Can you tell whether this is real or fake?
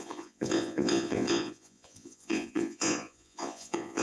fake